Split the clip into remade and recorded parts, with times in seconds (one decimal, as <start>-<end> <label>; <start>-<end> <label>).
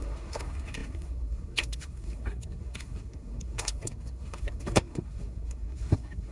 0.0-6.3 remade